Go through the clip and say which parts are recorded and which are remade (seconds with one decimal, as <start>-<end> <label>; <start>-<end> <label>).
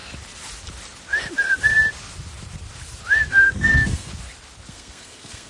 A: 0.0-3.3 recorded; 3.3-4.1 remade; 4.1-4.7 recorded; 4.7-5.5 remade